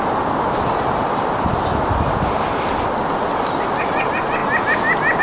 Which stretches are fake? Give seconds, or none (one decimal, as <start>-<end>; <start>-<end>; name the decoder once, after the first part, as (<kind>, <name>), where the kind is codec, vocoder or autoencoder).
none